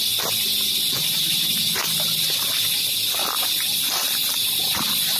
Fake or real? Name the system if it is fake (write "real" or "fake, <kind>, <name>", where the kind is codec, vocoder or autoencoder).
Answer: fake, vocoder, BigVGAN v2